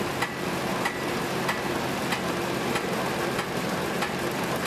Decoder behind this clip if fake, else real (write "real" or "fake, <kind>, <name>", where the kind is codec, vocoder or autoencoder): real